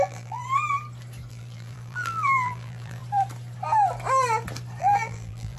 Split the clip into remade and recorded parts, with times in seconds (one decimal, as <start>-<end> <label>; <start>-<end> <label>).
0.0-0.4 remade; 0.4-1.3 recorded; 1.3-3.0 remade; 3.0-4.8 recorded; 4.8-5.6 remade